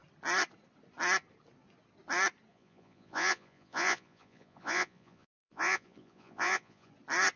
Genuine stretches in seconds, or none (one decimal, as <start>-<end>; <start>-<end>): 0.0-2.5; 6.9-7.4